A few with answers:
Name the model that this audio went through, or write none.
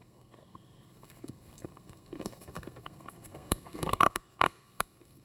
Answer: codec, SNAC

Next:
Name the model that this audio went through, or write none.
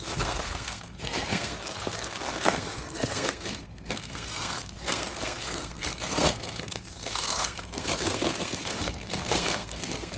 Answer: codec, SNAC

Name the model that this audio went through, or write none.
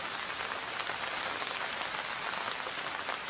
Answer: none